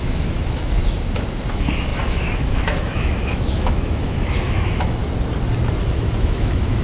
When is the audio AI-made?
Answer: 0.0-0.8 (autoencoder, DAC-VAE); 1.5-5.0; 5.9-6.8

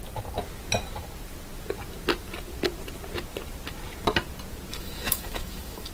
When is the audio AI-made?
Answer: 4.7-5.9 (autoencoder, DAC-VAE)

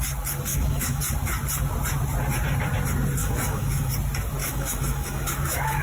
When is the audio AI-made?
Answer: 0.5-1.0 (autoencoder, DAC-VAE); 3.2-3.9; 4.4-5.8

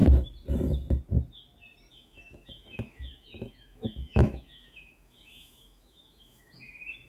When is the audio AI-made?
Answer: 1.9-7.1 (autoencoder, DAC-VAE)